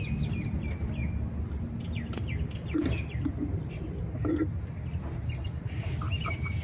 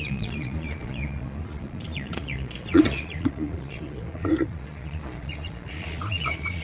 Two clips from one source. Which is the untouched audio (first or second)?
first